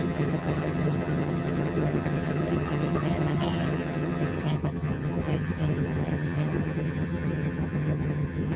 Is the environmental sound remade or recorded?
remade